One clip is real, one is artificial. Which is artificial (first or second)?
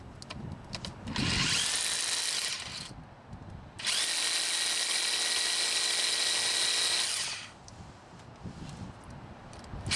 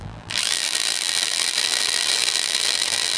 second